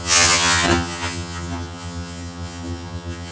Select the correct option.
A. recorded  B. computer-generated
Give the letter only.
B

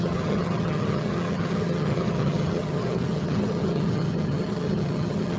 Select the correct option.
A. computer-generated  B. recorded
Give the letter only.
A